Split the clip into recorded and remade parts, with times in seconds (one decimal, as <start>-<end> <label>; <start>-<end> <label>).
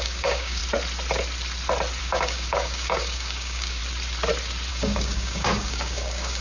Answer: 0.0-0.6 remade; 0.6-2.0 recorded; 2.0-3.8 remade; 3.8-4.7 recorded; 4.7-6.4 remade